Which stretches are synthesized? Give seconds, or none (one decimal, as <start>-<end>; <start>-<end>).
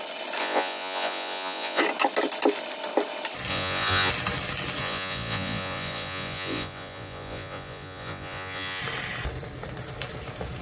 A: 0.4-1.8; 3.5-4.1; 4.8-8.8